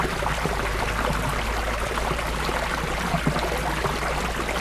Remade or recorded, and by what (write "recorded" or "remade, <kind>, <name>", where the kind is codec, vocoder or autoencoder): recorded